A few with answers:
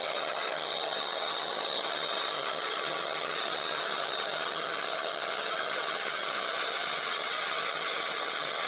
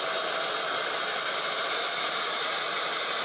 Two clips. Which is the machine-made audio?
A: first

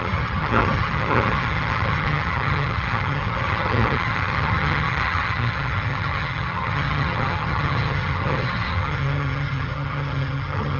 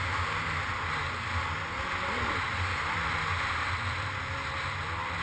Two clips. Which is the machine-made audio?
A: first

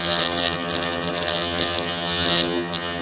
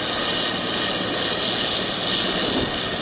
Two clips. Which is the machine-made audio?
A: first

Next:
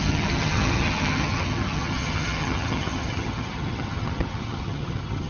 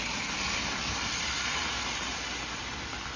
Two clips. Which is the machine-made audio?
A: first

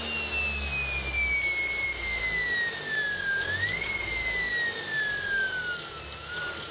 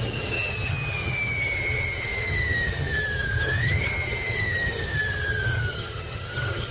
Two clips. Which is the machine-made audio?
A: second